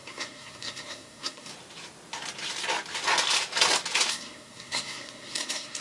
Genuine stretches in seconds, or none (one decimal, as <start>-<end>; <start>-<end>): 1.5-4.1